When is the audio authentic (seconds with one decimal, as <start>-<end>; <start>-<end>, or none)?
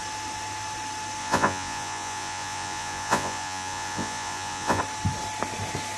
0.0-1.2; 4.8-6.0